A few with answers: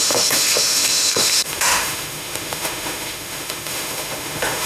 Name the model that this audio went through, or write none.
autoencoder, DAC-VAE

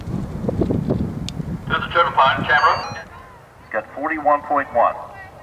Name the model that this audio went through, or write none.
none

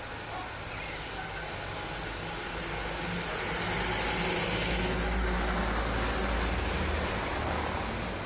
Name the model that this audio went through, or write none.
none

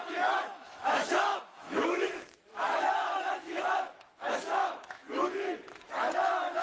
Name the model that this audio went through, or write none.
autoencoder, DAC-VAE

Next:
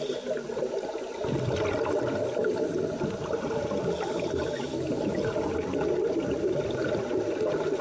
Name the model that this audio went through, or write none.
none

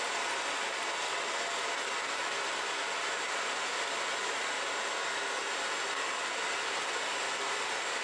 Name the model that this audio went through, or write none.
none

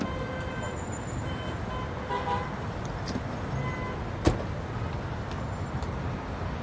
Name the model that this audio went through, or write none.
none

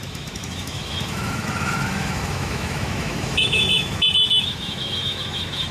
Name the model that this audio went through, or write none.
autoencoder, DAC-VAE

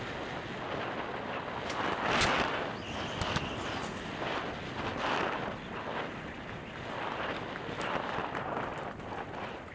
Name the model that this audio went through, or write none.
none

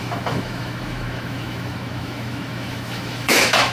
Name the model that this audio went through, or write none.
autoencoder, DAC-VAE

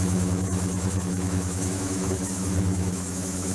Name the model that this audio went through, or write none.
autoencoder, DAC-VAE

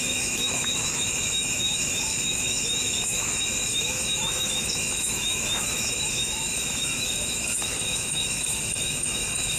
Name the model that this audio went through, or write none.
autoencoder, DAC-VAE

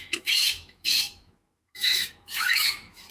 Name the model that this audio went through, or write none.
autoencoder, DAC-VAE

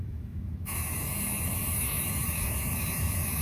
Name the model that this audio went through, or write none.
autoencoder, DAC-VAE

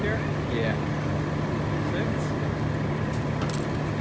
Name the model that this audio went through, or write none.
none